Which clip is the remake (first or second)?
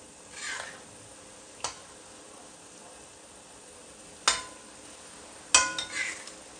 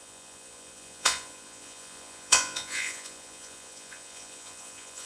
second